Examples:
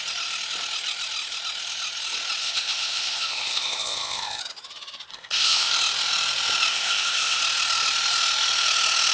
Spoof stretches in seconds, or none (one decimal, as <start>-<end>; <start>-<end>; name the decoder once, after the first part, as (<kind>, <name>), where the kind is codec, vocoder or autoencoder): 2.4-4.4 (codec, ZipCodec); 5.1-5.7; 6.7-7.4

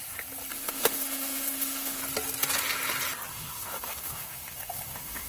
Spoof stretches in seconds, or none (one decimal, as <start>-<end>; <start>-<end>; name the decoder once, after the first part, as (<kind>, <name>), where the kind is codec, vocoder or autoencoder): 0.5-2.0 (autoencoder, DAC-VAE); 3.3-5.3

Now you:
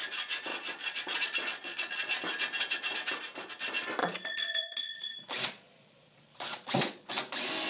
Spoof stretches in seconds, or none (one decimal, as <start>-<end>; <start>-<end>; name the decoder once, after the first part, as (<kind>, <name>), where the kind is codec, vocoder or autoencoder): 0.5-2.2 (vocoder, Vocos); 4.0-7.1

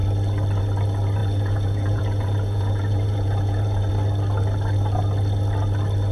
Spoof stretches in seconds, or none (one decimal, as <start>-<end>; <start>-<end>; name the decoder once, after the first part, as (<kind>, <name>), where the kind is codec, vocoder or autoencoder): 1.2-3.9 (vocoder, Vocos)